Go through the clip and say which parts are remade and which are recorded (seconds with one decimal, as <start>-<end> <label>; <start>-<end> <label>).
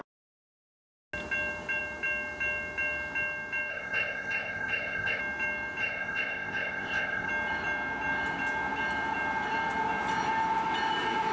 0.0-3.7 recorded; 3.7-5.2 remade; 5.2-5.8 recorded; 5.8-7.3 remade; 7.3-11.3 recorded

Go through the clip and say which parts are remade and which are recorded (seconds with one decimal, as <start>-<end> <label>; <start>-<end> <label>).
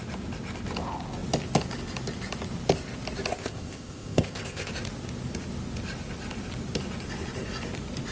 0.0-3.3 recorded; 3.3-4.7 remade; 4.7-8.1 recorded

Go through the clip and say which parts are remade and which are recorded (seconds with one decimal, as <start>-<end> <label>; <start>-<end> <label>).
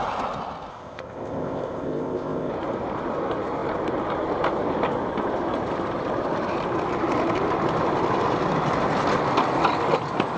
0.0-0.7 recorded; 0.7-2.5 remade; 2.5-10.4 recorded